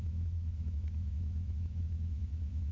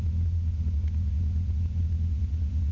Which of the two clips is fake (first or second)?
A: first